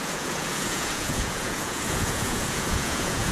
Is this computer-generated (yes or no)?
yes